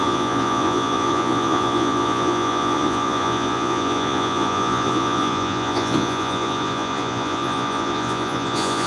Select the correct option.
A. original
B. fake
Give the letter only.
B